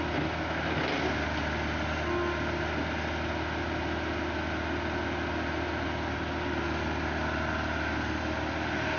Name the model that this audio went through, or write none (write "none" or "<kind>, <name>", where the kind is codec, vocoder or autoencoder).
none